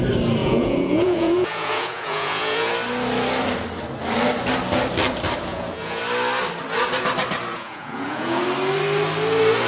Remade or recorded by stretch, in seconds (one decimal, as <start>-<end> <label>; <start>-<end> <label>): 0.0-0.4 recorded; 0.4-2.7 remade; 2.7-5.5 recorded; 5.5-6.0 remade; 6.0-7.5 recorded; 7.5-8.4 remade; 8.4-9.7 recorded